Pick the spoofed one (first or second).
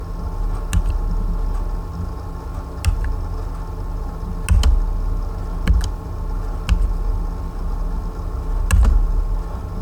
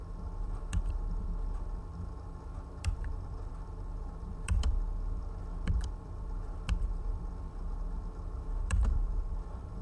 second